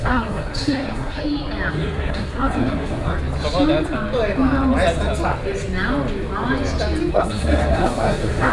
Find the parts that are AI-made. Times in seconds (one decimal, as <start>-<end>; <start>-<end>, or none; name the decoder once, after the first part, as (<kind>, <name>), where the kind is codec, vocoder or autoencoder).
0.0-1.2 (codec, SNAC); 1.7-3.1; 7.1-8.5